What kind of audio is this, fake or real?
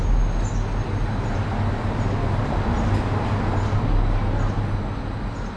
real